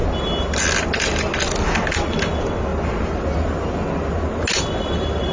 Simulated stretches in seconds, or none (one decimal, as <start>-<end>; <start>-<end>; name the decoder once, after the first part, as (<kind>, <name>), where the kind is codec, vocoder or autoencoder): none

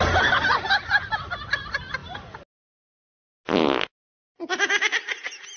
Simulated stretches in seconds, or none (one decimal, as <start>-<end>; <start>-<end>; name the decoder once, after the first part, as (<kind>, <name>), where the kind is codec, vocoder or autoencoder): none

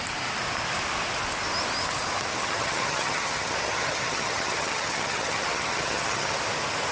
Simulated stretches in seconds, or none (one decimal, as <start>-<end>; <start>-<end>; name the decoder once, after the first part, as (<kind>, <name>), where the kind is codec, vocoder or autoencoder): 2.3-6.4 (vocoder, HiFi-GAN)

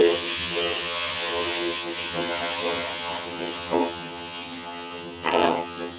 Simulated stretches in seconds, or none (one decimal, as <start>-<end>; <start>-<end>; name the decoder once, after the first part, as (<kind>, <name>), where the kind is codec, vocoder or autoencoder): 0.0-6.0 (vocoder, HiFi-GAN)

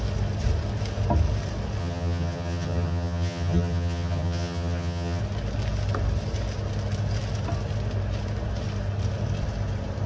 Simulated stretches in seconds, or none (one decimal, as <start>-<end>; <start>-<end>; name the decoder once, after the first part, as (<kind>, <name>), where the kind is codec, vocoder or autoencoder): 1.8-5.2 (vocoder, HiFi-GAN)